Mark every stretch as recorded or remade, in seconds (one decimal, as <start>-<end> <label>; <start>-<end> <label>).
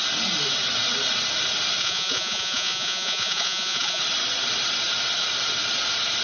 0.0-1.8 recorded; 1.8-4.0 remade; 4.0-6.2 recorded